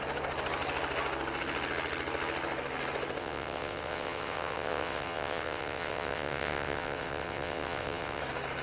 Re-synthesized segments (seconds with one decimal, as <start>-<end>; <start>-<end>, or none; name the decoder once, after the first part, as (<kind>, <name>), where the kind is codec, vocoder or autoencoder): 3.2-8.2 (vocoder, WaveNeXt)